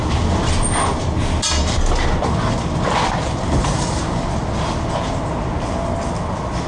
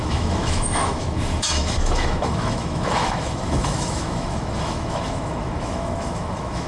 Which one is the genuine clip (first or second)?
first